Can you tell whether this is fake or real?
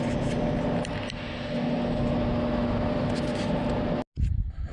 real